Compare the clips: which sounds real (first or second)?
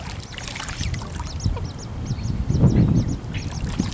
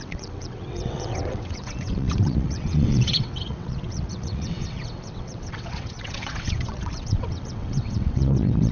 first